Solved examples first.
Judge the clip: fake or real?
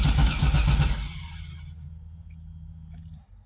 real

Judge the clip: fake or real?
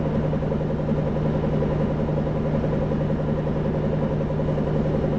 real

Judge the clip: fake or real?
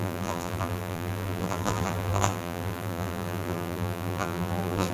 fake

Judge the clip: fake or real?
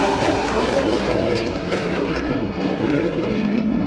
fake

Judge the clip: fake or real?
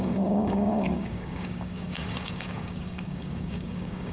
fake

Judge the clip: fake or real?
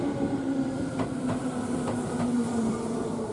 fake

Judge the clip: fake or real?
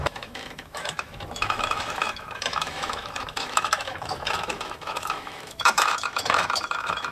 fake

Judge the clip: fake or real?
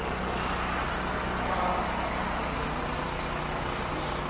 real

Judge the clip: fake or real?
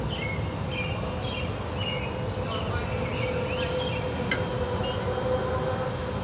real